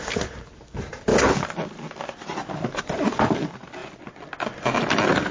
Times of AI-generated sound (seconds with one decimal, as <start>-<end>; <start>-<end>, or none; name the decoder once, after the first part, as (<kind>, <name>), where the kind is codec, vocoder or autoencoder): 0.0-1.1 (vocoder, BigVGAN v2); 2.8-3.8